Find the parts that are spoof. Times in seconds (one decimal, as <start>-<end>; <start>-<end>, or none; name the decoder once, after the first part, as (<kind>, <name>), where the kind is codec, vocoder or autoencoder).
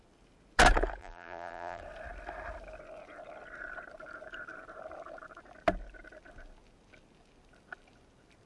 1.0-1.8 (vocoder, BigVGAN v2)